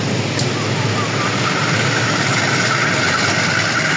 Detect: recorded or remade recorded